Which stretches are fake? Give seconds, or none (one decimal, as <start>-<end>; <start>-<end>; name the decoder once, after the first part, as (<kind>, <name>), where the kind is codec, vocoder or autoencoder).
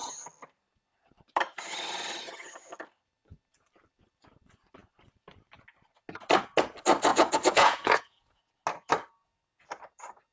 7.1-8.4 (vocoder, Vocos)